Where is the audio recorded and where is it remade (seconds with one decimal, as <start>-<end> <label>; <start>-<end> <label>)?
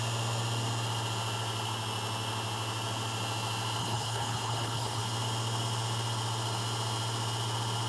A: 0.0-3.8 recorded; 3.8-5.0 remade; 5.0-7.9 recorded